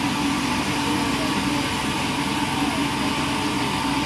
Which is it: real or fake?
real